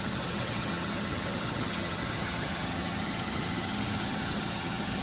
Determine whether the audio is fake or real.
fake